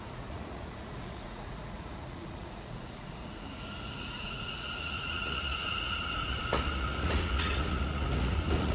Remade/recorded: remade